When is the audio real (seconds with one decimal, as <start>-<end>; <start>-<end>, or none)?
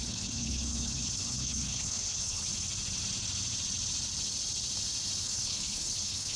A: 2.5-5.2